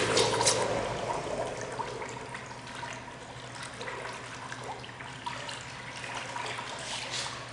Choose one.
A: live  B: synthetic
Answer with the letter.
A